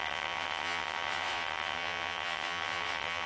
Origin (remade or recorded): remade